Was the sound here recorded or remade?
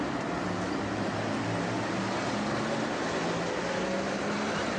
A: recorded